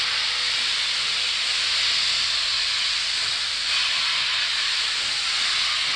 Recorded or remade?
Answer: recorded